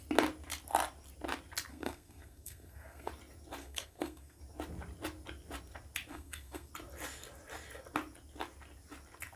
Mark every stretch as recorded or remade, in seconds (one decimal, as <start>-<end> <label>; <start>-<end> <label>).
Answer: 0.0-1.7 recorded; 1.7-3.1 remade; 3.1-3.6 recorded; 3.6-4.4 remade; 4.4-6.1 recorded; 6.1-6.7 remade; 6.7-9.4 recorded